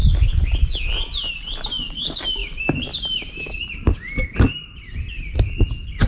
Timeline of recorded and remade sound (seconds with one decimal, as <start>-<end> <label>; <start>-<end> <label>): 0.0-6.1 recorded

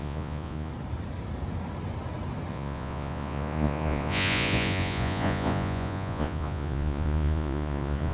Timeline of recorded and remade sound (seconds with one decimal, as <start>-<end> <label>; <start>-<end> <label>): 0.0-0.7 remade; 0.7-2.5 recorded; 2.5-8.1 remade

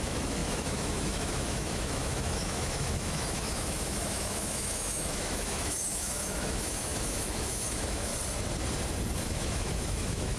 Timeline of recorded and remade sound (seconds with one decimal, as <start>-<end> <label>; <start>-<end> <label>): 0.0-8.1 remade; 8.1-9.2 recorded; 9.2-10.4 remade